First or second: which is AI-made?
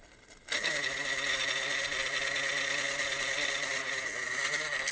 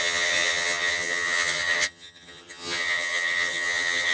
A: second